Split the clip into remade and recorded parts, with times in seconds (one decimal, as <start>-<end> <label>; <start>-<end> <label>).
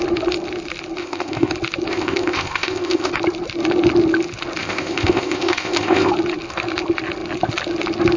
0.0-1.0 recorded; 1.0-1.5 remade; 1.5-1.9 recorded; 1.9-3.1 remade; 3.1-4.6 recorded; 4.6-6.1 remade; 6.1-8.2 recorded